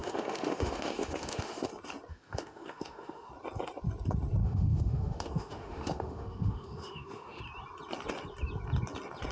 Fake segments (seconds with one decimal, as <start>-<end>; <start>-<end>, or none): 0.0-1.7; 2.1-3.3; 4.4-7.4